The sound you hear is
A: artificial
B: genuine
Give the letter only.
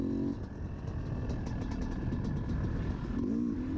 B